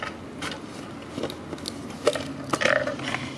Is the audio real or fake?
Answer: real